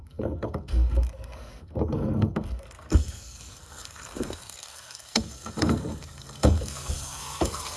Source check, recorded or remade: remade